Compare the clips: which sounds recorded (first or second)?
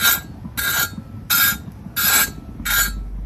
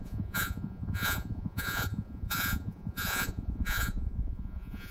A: first